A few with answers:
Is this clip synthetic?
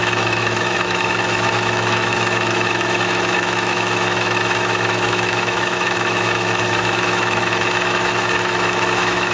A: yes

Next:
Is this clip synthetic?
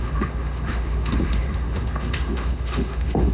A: yes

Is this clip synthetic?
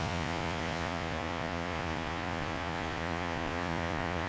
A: yes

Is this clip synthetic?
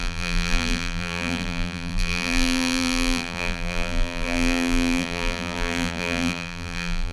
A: yes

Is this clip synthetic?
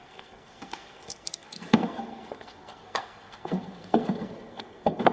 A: yes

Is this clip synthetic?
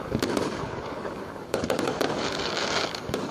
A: yes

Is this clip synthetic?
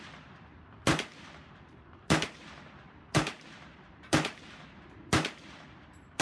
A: yes